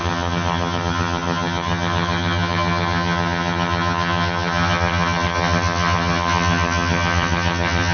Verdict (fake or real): fake